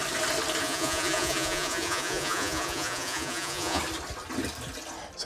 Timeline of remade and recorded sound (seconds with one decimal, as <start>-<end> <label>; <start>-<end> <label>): 0.0-0.6 recorded; 0.6-3.8 remade; 3.8-5.3 recorded